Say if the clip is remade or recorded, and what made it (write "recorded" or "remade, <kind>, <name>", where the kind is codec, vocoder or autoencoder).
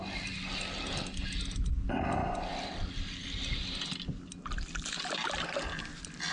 recorded